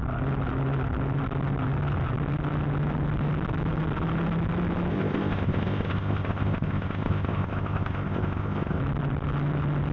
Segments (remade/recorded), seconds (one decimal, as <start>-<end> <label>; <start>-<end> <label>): 0.0-4.9 recorded; 4.9-8.8 remade; 8.8-9.9 recorded